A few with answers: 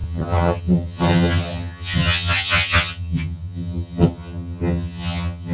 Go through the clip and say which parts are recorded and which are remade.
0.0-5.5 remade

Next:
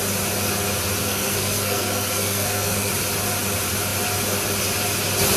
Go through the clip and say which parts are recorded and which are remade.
0.0-1.0 recorded; 1.0-2.9 remade; 2.9-5.4 recorded

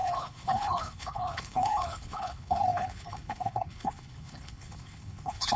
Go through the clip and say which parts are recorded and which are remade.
0.0-5.6 remade

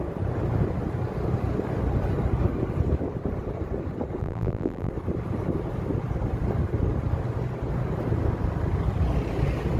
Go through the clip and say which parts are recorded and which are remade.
0.0-4.2 recorded; 4.2-4.9 remade; 4.9-9.8 recorded

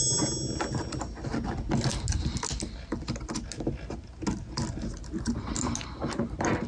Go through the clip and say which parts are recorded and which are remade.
0.0-6.7 recorded

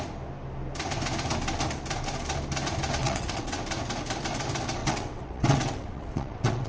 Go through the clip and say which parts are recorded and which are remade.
0.0-3.0 recorded; 3.0-3.6 remade; 3.6-4.8 recorded; 4.8-6.7 remade

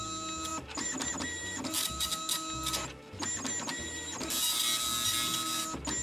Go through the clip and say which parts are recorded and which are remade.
0.0-0.5 recorded; 0.5-1.1 remade; 1.1-6.0 recorded